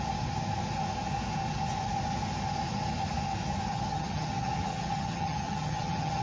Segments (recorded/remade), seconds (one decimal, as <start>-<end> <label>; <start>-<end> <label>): 0.0-3.7 recorded; 3.7-6.2 remade